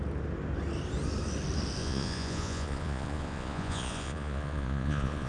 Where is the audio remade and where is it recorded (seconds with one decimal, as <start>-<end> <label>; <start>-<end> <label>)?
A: 0.0-1.8 recorded; 1.8-5.3 remade